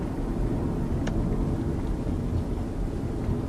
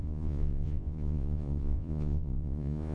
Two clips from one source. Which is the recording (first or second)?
first